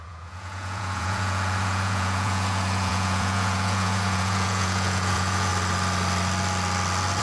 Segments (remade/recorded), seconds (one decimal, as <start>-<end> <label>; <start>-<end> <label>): 0.0-5.5 remade; 5.5-7.2 recorded